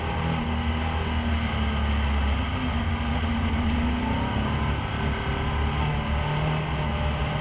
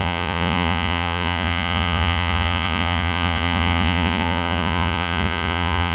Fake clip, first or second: second